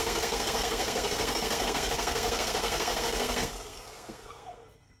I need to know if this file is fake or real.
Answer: fake